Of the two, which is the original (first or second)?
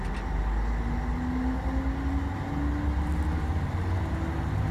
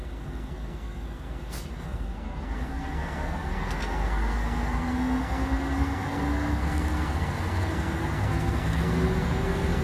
first